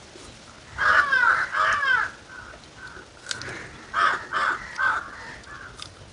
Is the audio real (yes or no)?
yes